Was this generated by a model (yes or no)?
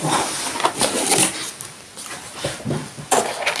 no